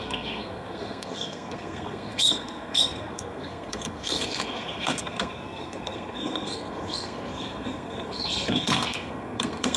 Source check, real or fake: fake